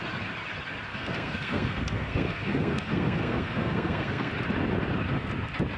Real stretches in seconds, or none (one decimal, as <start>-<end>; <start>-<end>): 0.0-0.9; 4.3-5.8